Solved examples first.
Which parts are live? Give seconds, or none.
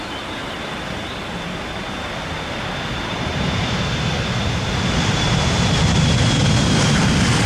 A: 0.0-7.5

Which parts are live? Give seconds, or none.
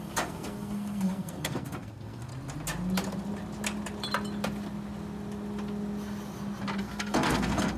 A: 2.3-6.8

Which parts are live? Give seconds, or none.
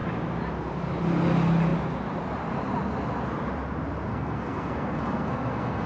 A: 0.0-4.1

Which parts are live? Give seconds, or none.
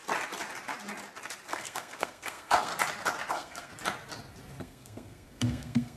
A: 0.0-1.5; 2.7-3.3; 3.7-4.6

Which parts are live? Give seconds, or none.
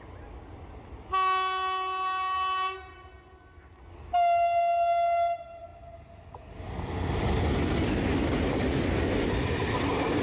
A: 0.0-10.2